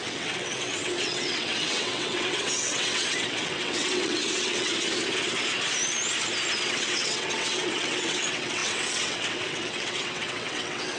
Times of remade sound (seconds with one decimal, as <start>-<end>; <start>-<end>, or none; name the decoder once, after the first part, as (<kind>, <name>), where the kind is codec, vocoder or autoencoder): 0.0-4.7 (vocoder, WaveNeXt); 6.6-11.0